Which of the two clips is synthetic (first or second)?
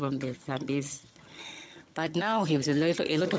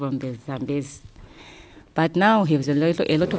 first